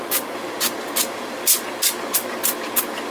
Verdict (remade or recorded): recorded